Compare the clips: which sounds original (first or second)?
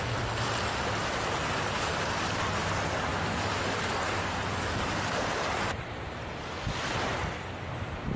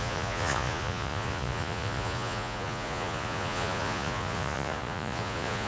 first